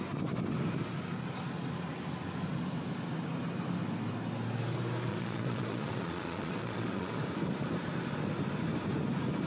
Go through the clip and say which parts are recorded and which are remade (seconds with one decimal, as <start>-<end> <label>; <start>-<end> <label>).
0.0-5.1 recorded; 5.1-7.2 remade; 7.2-9.5 recorded